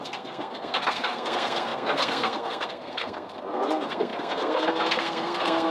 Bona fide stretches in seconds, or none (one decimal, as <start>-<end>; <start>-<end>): none